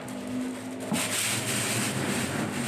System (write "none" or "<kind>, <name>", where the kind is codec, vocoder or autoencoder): none